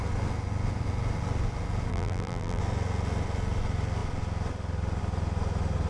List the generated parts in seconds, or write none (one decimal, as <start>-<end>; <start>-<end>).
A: 1.9-2.6